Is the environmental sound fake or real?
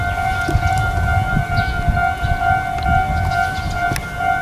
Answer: real